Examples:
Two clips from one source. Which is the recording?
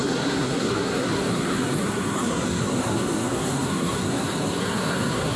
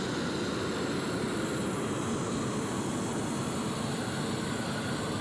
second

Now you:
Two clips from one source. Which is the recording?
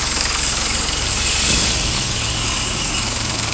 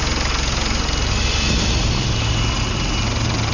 second